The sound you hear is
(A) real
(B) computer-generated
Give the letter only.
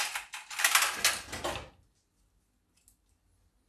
A